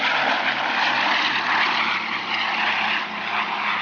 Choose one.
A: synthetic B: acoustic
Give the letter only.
B